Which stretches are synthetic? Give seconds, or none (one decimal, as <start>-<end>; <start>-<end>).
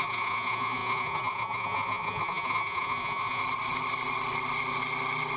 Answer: 0.0-3.4